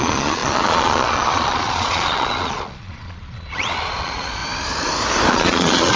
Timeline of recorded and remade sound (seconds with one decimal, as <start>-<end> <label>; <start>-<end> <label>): 0.0-4.4 remade; 4.4-5.3 recorded; 5.3-6.0 remade

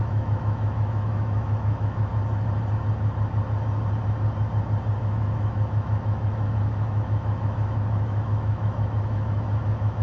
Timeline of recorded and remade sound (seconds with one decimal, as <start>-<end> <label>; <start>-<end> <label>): 0.0-2.1 remade; 2.1-5.0 recorded; 5.0-10.0 remade

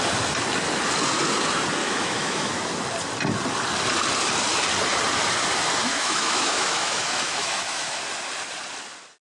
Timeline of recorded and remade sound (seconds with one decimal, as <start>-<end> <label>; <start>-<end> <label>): 0.0-1.8 recorded; 1.8-2.5 remade; 2.5-5.9 recorded; 5.9-8.0 remade; 8.0-9.2 recorded

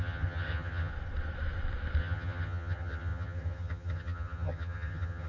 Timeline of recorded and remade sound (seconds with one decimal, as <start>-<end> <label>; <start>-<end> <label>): 0.0-0.9 remade; 0.9-2.0 recorded; 2.0-5.3 remade

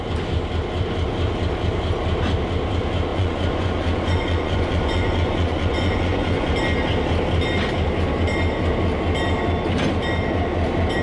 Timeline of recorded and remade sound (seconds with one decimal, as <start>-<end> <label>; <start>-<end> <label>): 0.0-3.1 recorded; 3.1-6.5 remade; 6.5-11.0 recorded

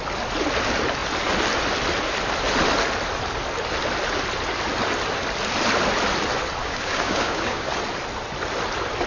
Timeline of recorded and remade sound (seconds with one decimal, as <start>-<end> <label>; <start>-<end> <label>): 0.0-6.6 recorded; 6.6-7.7 remade; 7.7-9.1 recorded

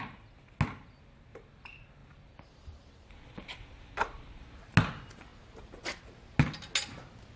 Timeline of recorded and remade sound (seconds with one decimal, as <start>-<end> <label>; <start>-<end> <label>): 0.0-2.0 recorded; 2.0-2.9 remade; 2.9-5.3 recorded; 5.3-6.0 remade; 6.0-7.4 recorded